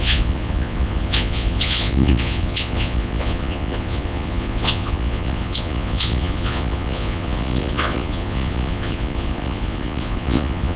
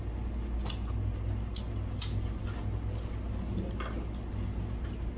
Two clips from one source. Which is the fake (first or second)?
first